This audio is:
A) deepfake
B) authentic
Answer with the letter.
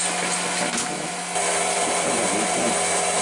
B